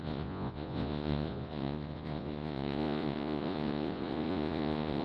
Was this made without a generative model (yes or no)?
no